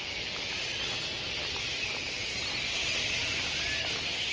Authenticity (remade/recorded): recorded